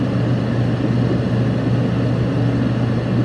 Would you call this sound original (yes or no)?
yes